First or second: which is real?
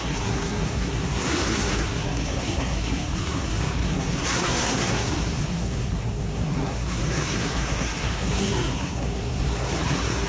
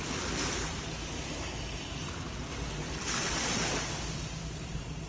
second